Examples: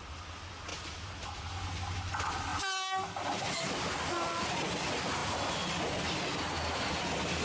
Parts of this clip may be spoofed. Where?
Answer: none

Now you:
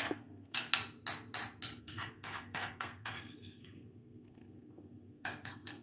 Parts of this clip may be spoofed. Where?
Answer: 0.0-0.7 (codec, SNAC); 1.8-5.8

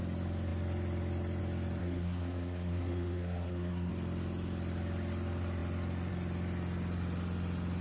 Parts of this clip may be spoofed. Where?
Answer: 1.8-3.9 (codec, SNAC)

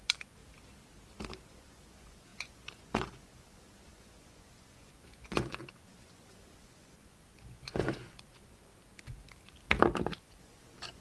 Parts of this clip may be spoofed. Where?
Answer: 0.0-0.4 (vocoder, Vocos); 1.5-8.7; 10.0-11.0